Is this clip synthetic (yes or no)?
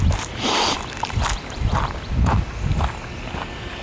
no